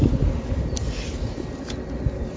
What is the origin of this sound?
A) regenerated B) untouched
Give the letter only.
B